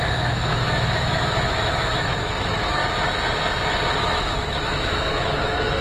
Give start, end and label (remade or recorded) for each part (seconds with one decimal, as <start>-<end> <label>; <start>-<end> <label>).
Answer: 0.0-2.8 remade; 2.8-4.0 recorded; 4.0-5.8 remade